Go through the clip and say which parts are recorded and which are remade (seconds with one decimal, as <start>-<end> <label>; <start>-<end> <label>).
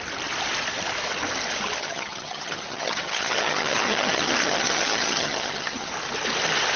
0.0-1.8 recorded; 1.8-5.9 remade; 5.9-6.8 recorded